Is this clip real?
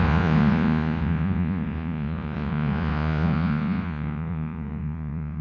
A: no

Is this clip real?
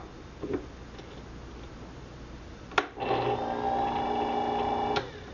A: yes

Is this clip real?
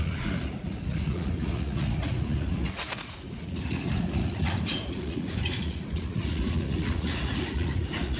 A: no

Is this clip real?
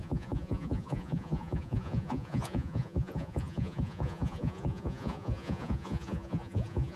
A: no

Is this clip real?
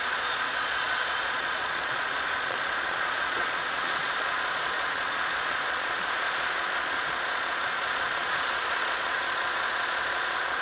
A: no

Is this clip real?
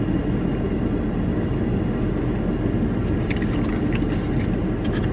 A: yes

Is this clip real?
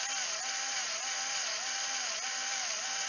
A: yes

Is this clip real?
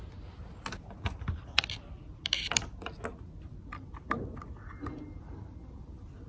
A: yes